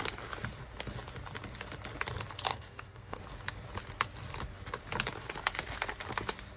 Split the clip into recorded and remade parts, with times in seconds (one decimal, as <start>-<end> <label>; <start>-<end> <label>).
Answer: 0.0-2.5 recorded; 2.5-3.2 remade; 3.2-6.6 recorded